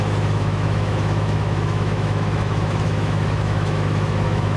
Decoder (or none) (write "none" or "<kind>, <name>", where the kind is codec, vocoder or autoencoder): autoencoder, DAC-VAE